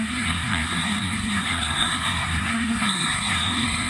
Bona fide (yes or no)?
no